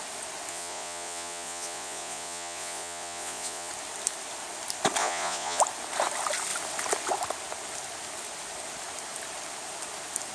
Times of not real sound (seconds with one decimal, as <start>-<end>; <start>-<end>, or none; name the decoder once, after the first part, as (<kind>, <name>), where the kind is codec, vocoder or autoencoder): 0.5-3.7 (vocoder, Vocos); 5.0-5.6